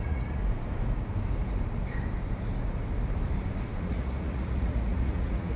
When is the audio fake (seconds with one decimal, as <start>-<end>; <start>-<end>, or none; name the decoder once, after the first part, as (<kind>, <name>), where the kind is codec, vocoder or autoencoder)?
0.0-0.4 (vocoder, Vocos); 3.8-5.6